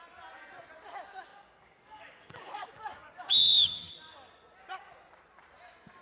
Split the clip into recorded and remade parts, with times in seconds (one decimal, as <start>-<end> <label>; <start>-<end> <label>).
0.0-1.3 recorded; 1.3-3.9 remade; 3.9-6.0 recorded